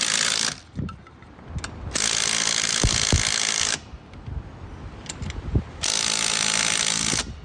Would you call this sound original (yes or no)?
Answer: yes